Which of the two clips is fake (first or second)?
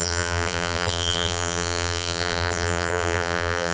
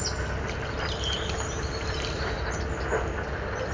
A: first